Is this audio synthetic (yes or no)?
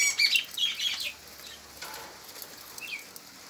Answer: no